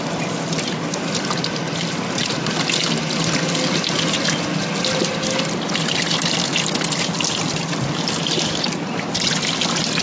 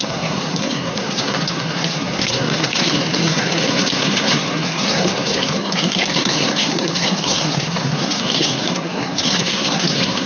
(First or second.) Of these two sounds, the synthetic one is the second